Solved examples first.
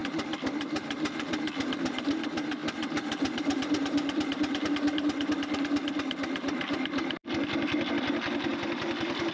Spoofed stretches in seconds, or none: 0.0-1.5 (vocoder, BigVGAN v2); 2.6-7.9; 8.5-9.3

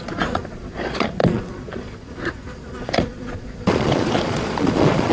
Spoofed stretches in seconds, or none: 0.0-5.1 (vocoder, Vocos)

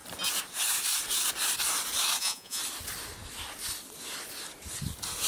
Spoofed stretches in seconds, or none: 2.2-2.6 (vocoder, Vocos)

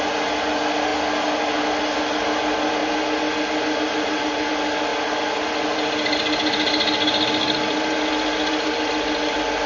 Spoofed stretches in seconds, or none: none

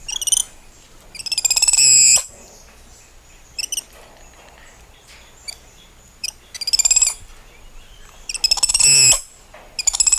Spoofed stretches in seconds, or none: none

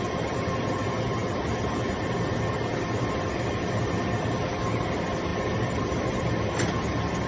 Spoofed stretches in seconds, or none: 5.3-6.3 (vocoder, BigVGAN v2)

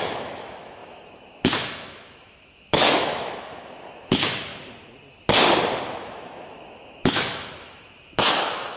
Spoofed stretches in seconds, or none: 0.0-4.5 (autoencoder, DAC-VAE); 6.0-8.8

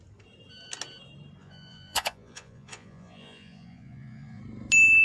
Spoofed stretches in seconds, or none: 1.4-4.4 (vocoder, Vocos)